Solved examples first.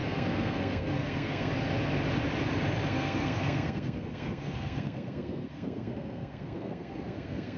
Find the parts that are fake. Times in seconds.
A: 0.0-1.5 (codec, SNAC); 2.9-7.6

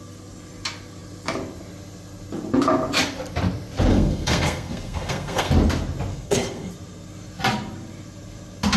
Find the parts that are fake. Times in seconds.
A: 3.9-5.5 (codec, SNAC); 6.1-6.7

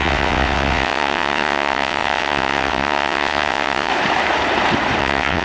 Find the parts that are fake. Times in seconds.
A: 0.0-3.9 (vocoder, WaveNeXt); 5.0-5.4

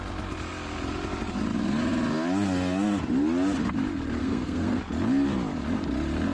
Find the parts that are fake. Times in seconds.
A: 4.2-4.8 (codec, SNAC)